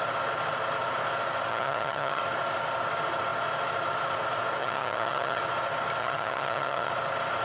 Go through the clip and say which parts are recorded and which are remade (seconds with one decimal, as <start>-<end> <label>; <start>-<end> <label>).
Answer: 0.0-1.5 recorded; 1.5-2.2 remade; 2.2-4.6 recorded; 4.6-5.4 remade; 5.4-6.0 recorded; 6.0-6.9 remade; 6.9-7.4 recorded